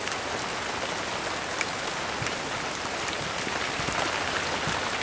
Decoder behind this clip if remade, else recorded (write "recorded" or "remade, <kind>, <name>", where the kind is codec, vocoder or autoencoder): recorded